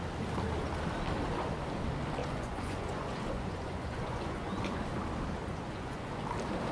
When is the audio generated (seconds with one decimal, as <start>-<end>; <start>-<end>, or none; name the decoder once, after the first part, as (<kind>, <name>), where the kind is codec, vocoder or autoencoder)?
2.2-4.8 (vocoder, Vocos); 5.4-6.2